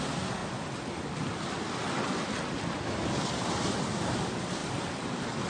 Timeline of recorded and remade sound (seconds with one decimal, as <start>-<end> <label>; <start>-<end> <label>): 0.0-5.5 recorded